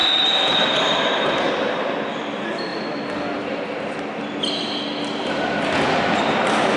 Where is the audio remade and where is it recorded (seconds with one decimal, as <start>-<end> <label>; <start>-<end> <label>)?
0.0-1.5 remade; 1.5-6.8 recorded

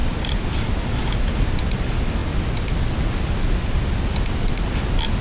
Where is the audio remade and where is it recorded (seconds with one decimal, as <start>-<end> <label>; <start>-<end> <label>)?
0.0-5.2 recorded

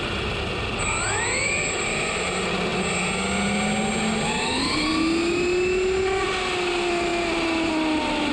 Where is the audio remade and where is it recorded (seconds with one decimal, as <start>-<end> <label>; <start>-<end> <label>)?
0.0-8.3 recorded